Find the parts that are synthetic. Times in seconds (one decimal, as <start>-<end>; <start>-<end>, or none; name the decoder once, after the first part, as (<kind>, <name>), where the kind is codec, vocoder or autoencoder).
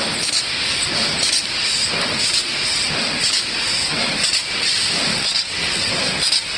5.1-5.9 (vocoder, WaveNeXt)